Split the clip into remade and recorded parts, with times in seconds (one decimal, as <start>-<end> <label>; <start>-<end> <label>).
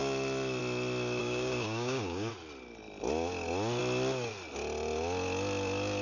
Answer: 0.0-1.2 recorded; 1.2-2.3 remade; 2.3-6.0 recorded